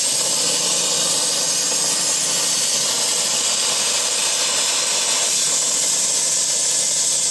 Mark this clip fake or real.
real